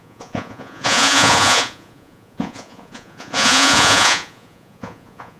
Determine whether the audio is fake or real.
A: fake